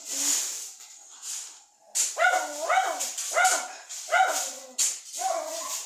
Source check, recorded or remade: recorded